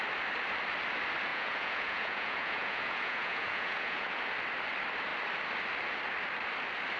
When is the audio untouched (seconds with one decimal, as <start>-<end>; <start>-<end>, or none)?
0.0-1.3; 4.2-7.0